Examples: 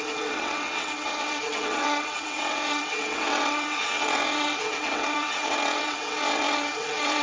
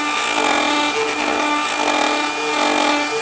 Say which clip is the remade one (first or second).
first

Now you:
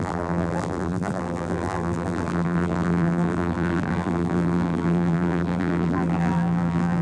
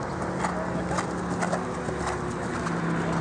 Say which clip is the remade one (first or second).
first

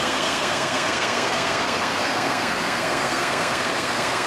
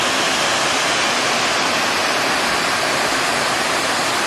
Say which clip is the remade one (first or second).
first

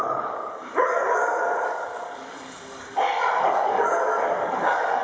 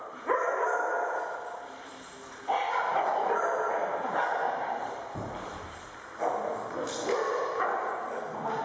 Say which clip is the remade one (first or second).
first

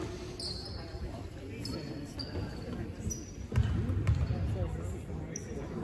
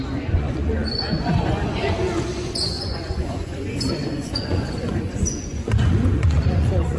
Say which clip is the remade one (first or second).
second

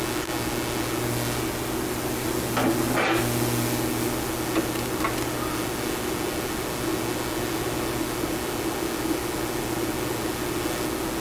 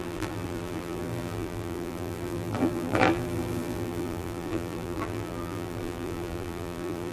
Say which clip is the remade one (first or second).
second